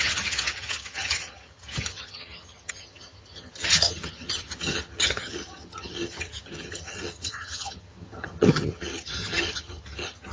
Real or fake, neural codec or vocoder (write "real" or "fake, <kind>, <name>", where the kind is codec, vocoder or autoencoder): fake, vocoder, HiFi-GAN